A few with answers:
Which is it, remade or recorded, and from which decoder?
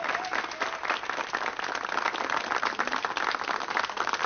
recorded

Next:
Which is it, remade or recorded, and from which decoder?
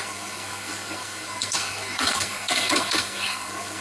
remade, codec, SNAC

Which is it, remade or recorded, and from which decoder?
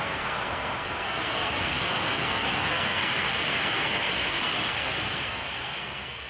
remade, codec, SNAC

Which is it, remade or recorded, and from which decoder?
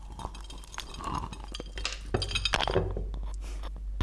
recorded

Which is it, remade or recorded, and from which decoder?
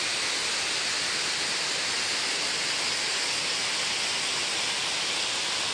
recorded